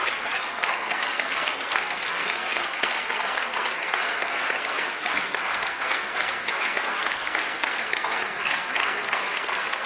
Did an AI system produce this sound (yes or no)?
yes